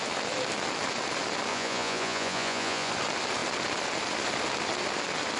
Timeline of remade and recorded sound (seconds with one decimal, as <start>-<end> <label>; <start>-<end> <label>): 0.0-1.5 recorded; 1.5-2.9 remade; 2.9-5.4 recorded